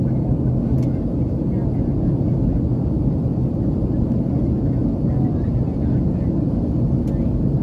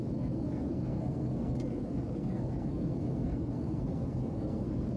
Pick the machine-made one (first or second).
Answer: second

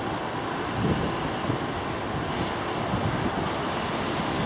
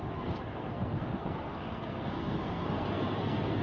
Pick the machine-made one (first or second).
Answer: second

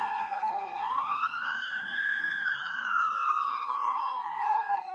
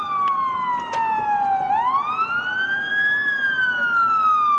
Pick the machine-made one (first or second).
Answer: first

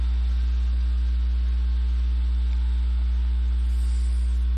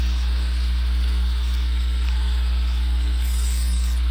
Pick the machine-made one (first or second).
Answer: second